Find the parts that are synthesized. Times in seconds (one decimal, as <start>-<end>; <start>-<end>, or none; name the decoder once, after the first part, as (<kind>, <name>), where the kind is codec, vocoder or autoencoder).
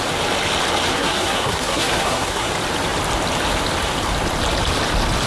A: 0.9-2.5 (codec, SNAC)